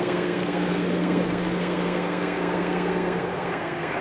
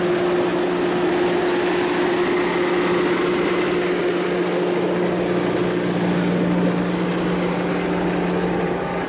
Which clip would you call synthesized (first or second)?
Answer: first